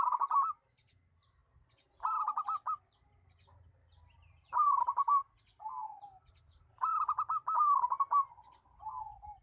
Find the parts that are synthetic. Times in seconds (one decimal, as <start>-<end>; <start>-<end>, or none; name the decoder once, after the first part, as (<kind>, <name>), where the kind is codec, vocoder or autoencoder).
none